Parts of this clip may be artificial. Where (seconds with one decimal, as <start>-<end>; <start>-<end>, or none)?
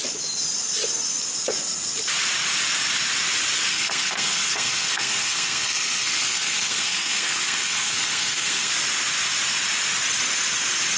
3.7-8.7